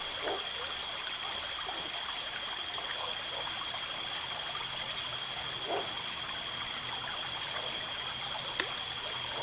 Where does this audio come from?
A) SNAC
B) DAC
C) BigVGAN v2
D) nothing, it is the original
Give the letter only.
D